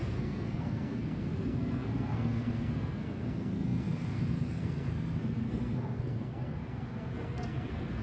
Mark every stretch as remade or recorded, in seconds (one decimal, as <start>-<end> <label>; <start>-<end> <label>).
0.0-8.0 remade